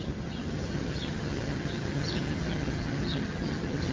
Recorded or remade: remade